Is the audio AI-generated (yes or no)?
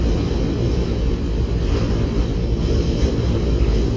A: no